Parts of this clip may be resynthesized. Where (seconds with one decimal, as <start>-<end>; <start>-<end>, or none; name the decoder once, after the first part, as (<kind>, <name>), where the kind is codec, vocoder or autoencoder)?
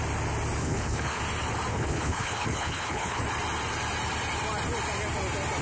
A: 0.6-1.2 (codec, HILCodec); 1.7-3.2